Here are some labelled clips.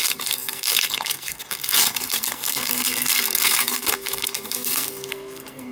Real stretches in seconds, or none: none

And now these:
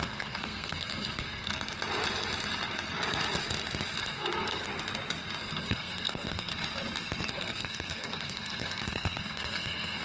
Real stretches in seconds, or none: 1.5-4.0; 4.7-5.4; 6.5-7.3

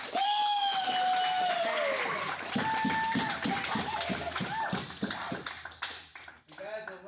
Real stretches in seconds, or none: 0.0-7.1